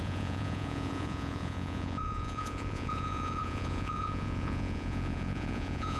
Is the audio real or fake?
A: fake